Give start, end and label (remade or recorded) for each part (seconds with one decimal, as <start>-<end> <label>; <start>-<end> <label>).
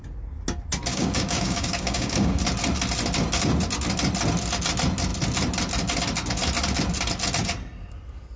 0.0-0.9 recorded; 0.9-2.4 remade; 2.4-8.4 recorded